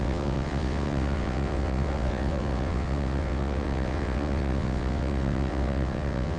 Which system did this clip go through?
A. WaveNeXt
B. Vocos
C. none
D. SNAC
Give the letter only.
A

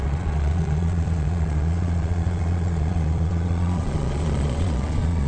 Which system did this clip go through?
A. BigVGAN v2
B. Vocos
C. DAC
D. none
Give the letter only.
B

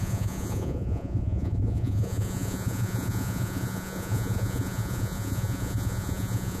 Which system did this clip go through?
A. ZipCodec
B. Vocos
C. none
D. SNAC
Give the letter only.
B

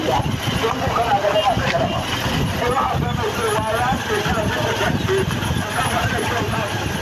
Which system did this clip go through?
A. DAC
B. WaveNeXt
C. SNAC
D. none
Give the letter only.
D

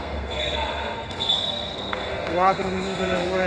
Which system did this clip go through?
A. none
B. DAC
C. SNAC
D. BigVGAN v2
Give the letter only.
C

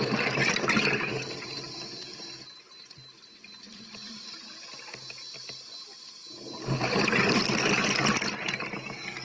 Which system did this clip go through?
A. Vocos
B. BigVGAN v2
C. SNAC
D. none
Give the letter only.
D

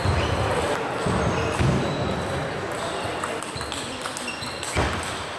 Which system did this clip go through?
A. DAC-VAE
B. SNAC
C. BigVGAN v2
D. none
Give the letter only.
D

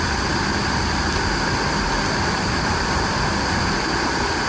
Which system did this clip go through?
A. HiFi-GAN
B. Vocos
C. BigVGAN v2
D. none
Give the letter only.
D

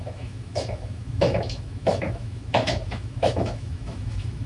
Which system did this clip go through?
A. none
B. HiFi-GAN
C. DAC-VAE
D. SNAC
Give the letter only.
C